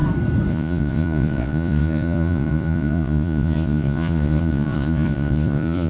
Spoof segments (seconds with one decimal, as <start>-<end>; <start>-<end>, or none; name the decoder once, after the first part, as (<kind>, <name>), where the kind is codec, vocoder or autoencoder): 0.5-5.9 (vocoder, Vocos)